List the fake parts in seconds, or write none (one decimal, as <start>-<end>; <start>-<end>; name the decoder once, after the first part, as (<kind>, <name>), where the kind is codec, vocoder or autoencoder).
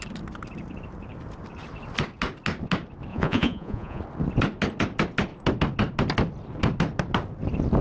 3.1-4.0 (vocoder, Vocos)